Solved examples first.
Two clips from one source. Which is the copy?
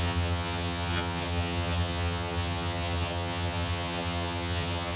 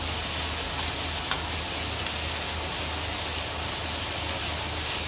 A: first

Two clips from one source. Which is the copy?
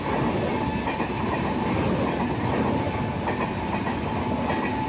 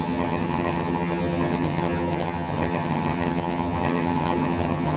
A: second